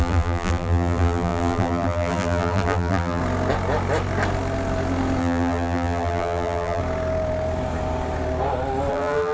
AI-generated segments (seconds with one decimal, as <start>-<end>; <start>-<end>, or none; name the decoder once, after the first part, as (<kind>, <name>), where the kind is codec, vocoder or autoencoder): 0.0-3.2 (vocoder, BigVGAN v2); 5.2-6.8; 8.9-9.3